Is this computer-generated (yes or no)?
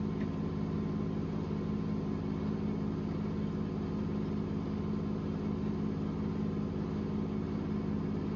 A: no